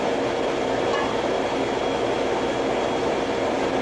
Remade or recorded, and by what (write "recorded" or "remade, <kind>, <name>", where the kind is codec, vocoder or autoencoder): recorded